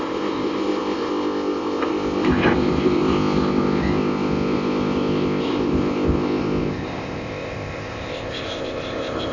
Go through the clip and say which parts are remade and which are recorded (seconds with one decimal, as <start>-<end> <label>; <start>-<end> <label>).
0.0-9.3 remade